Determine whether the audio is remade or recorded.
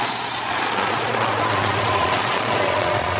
remade